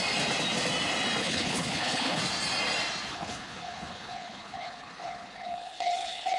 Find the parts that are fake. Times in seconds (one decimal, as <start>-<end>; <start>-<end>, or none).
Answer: 1.2-2.2; 3.1-6.4